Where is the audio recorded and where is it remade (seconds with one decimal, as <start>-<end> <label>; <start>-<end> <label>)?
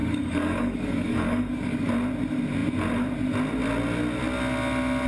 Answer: 0.0-1.9 remade; 1.9-5.1 recorded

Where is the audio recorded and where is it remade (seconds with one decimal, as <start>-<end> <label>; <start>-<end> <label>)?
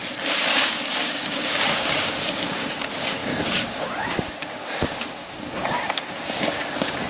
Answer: 0.0-0.5 recorded; 0.5-7.1 remade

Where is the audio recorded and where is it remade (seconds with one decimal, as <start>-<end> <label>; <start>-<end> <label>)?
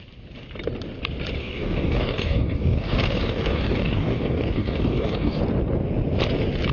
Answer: 0.0-1.4 recorded; 1.4-5.4 remade; 5.4-6.7 recorded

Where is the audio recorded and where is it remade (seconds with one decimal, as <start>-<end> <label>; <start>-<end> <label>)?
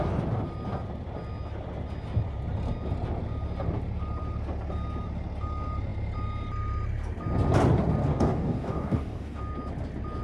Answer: 0.0-8.0 recorded; 8.0-9.4 remade; 9.4-10.2 recorded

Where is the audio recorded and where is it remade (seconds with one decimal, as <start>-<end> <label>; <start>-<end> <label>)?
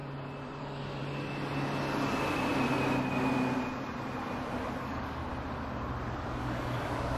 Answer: 0.0-0.6 recorded; 0.6-1.0 remade; 1.0-4.8 recorded; 4.8-5.2 remade; 5.2-6.4 recorded; 6.4-7.2 remade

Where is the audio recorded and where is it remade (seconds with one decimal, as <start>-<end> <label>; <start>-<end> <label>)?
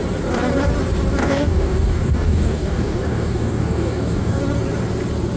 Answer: 0.0-1.2 recorded; 1.2-4.4 remade; 4.4-5.4 recorded